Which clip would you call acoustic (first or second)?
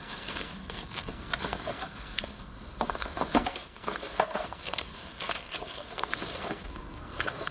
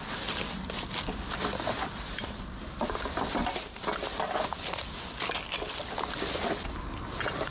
second